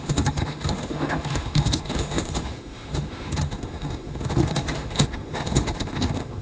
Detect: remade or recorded remade